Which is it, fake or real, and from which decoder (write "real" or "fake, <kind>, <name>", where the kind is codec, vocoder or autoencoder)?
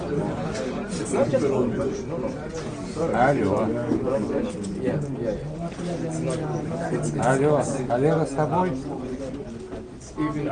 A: real